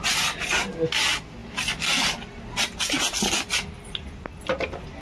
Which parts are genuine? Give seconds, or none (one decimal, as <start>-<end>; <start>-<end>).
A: 0.0-5.0